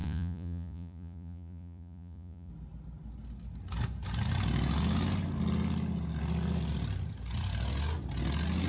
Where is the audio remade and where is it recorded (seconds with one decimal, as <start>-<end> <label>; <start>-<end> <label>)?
0.0-2.5 remade; 2.5-8.7 recorded